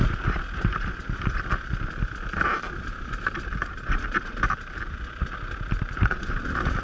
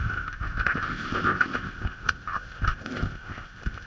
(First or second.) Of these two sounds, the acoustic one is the first